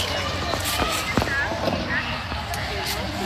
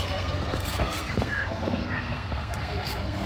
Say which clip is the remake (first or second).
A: second